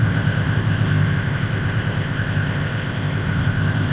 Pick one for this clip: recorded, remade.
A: remade